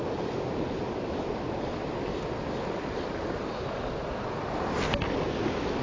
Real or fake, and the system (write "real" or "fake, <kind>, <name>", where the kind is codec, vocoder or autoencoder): real